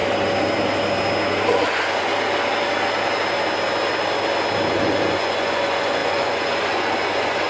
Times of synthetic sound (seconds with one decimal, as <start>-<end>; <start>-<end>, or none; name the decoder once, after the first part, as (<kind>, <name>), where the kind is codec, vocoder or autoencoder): 1.5-2.1 (vocoder, Vocos); 4.7-7.5